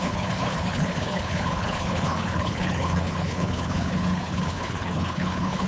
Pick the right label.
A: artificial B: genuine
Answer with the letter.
A